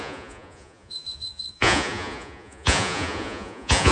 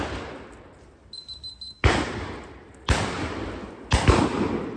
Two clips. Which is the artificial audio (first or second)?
first